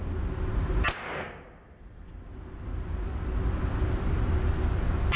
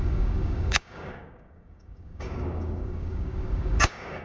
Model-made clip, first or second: second